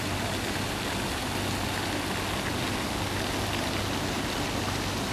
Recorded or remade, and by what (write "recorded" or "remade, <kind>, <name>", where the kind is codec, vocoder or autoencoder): recorded